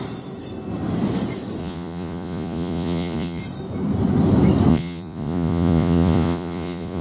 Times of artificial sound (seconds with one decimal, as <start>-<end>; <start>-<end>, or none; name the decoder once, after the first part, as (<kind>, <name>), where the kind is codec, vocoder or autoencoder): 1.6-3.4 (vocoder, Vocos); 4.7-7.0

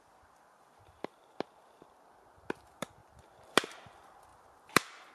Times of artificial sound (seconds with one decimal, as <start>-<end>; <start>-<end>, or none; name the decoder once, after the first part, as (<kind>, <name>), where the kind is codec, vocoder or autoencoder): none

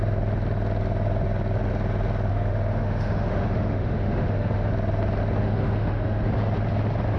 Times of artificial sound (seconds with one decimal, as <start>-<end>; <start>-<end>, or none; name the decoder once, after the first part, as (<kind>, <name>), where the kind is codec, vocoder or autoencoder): 2.3-4.7 (autoencoder, DAC-VAE); 5.4-6.3

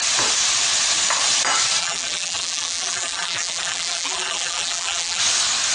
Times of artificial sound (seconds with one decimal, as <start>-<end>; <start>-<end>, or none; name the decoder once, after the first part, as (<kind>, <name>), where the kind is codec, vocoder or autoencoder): 1.8-5.2 (vocoder, BigVGAN v2)

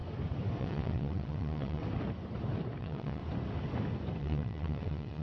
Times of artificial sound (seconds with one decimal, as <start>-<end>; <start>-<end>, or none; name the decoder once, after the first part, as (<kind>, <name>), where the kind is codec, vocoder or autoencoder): 0.6-1.8 (vocoder, WaveNeXt); 2.8-3.2; 4.2-5.2

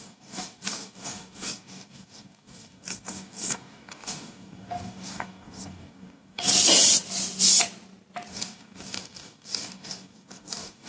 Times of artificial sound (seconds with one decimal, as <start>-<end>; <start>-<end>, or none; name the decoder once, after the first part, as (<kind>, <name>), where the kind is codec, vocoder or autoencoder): 0.0-6.5 (codec, DAC); 8.3-10.9

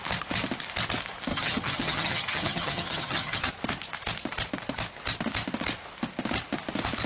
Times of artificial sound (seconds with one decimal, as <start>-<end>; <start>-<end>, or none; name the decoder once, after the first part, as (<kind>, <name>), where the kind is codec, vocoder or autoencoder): 1.3-3.5 (vocoder, HiFi-GAN)